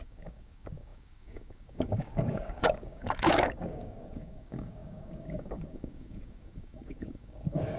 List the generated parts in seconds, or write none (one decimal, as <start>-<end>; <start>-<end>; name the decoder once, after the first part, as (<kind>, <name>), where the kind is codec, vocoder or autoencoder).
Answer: 0.0-7.8 (codec, DAC)